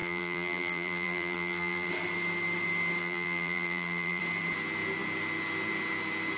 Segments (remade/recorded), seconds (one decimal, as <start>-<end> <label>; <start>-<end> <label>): 0.0-1.9 remade; 1.9-3.0 recorded; 3.0-4.2 remade; 4.2-6.4 recorded